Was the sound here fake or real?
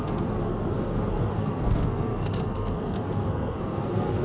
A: fake